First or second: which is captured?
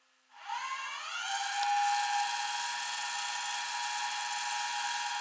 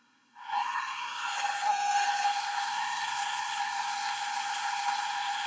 first